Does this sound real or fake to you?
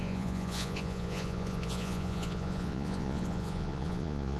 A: fake